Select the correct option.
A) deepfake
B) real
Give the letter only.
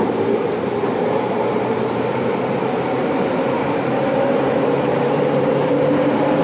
A